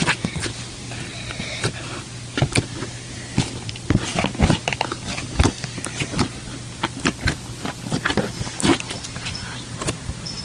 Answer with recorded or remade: recorded